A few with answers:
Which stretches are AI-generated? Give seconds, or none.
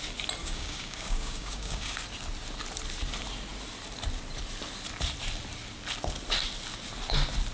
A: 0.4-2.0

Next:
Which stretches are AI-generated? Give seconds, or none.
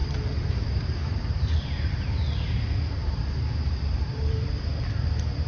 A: 0.0-1.9; 3.0-4.6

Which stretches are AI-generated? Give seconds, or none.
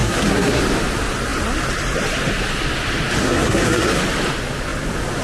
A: 0.0-0.6; 3.2-4.0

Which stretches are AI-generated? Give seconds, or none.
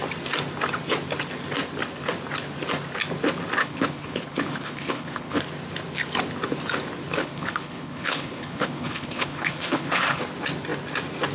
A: 3.6-5.4; 7.2-10.2